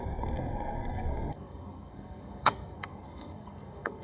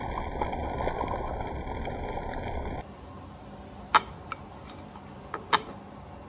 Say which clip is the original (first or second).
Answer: second